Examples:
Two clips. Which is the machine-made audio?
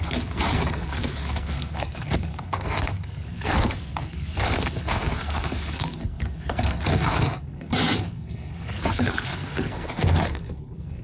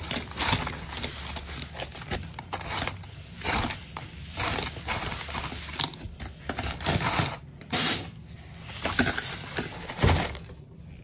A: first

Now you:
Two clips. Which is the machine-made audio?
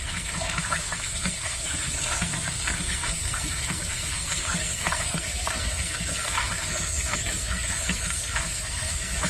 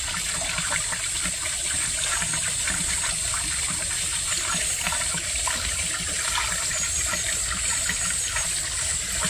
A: first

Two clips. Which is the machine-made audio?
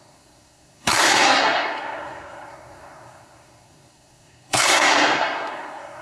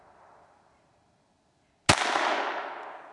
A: first